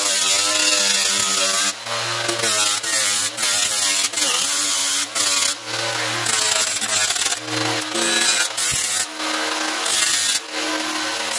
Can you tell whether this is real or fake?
real